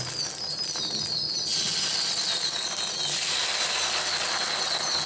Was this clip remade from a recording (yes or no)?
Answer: no